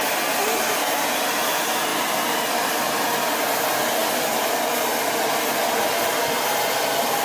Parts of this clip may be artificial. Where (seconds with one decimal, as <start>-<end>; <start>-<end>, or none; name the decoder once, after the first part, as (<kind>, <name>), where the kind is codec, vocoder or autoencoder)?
4.0-5.0 (vocoder, BigVGAN v2)

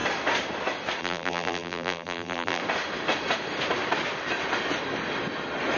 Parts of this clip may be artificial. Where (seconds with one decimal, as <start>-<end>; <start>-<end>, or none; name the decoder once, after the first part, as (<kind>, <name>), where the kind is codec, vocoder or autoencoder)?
1.0-2.6 (vocoder, BigVGAN v2)

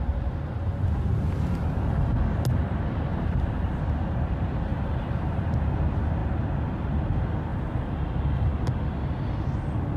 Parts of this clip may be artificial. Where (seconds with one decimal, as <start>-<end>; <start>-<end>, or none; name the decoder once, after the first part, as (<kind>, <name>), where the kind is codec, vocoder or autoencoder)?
3.1-3.8 (vocoder, BigVGAN v2); 4.7-5.5; 7.5-8.0

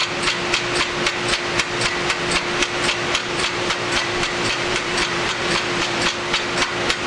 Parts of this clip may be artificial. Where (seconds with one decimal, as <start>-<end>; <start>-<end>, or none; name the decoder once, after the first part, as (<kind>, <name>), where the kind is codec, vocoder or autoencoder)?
3.2-6.0 (vocoder, BigVGAN v2)

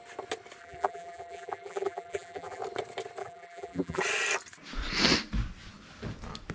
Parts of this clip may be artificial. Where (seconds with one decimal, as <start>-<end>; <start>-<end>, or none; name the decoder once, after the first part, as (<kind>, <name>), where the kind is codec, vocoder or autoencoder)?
0.6-2.6 (vocoder, BigVGAN v2); 3.2-4.0

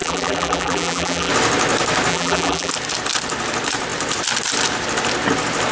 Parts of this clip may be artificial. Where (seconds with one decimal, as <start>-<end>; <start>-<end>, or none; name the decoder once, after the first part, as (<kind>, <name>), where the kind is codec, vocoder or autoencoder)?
0.0-1.3 (vocoder, BigVGAN v2); 2.1-2.7